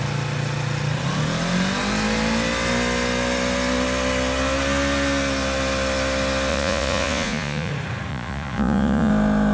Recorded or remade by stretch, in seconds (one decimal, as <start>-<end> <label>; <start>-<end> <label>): 0.0-6.5 recorded; 6.5-7.7 remade; 7.7-8.1 recorded; 8.1-9.1 remade; 9.1-9.5 recorded